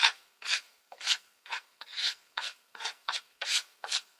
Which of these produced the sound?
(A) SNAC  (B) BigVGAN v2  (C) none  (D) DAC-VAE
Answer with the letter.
A